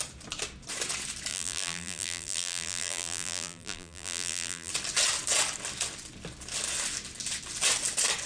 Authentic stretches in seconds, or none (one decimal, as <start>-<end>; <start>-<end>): 0.0-1.3; 4.7-8.3